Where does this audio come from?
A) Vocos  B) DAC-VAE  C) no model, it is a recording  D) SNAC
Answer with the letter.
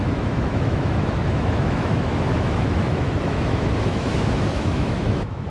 B